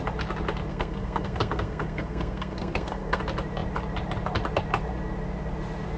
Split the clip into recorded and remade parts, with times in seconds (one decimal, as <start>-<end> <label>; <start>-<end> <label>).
0.0-0.7 recorded; 0.7-3.2 remade; 3.2-6.0 recorded